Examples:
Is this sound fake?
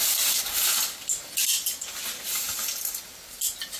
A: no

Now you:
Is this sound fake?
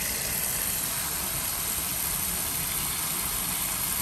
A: no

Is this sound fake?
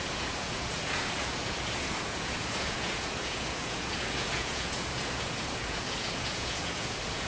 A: yes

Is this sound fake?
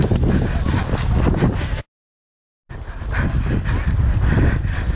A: no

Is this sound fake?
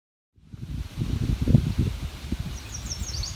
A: yes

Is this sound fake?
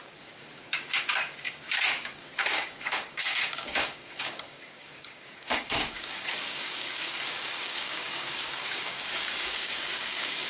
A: yes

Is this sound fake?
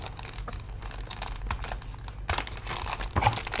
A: no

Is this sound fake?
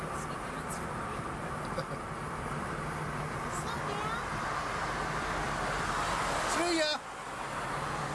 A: no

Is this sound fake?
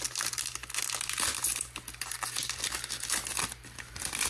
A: no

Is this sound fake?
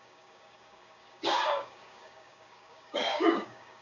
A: yes